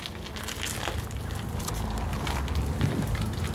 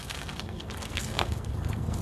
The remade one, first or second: second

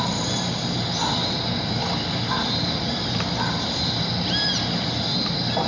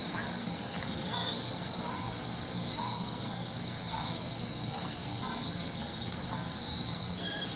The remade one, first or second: second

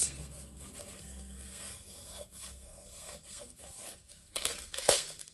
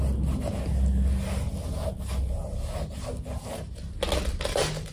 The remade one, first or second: first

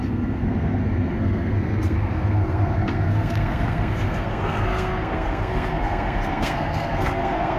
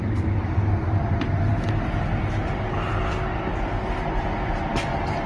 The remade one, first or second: first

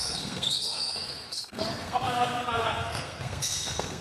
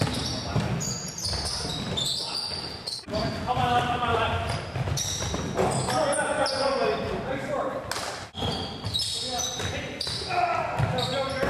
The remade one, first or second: first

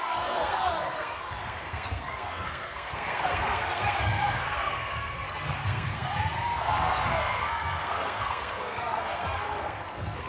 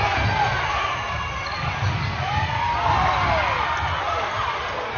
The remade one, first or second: first